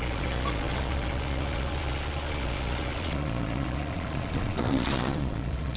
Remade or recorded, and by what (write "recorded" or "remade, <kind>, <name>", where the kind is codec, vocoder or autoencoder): remade, vocoder, Vocos